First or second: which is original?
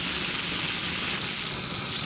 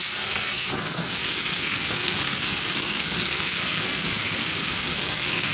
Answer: first